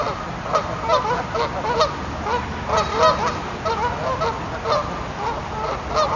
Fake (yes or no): no